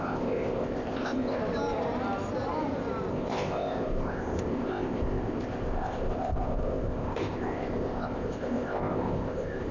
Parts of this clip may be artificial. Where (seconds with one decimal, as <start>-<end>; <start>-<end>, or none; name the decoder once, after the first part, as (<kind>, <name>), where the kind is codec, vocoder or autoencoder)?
0.0-1.4 (codec, ZipCodec); 3.1-9.7